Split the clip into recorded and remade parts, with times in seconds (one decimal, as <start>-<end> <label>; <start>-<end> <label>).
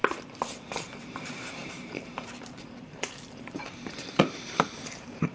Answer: 0.0-1.0 recorded; 1.0-5.3 remade